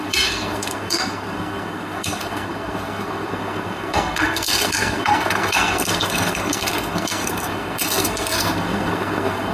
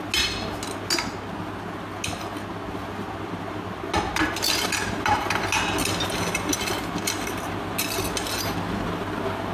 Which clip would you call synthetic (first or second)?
first